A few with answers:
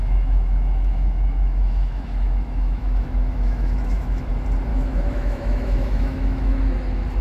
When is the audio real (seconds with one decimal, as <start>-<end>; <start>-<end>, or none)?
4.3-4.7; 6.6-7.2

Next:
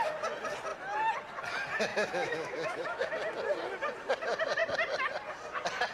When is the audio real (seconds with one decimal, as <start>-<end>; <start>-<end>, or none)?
0.0-1.9; 3.1-5.9

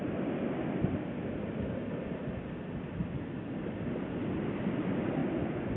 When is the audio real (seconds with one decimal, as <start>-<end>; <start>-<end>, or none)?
0.0-5.8

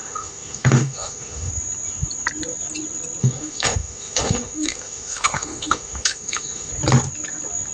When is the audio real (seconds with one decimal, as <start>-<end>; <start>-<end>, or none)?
1.5-3.2; 6.7-7.7

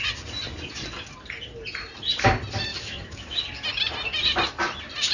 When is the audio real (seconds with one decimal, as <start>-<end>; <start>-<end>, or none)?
0.0-2.7; 3.4-5.1